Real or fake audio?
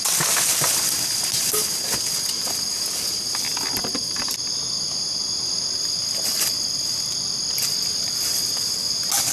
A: real